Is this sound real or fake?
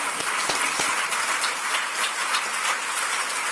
fake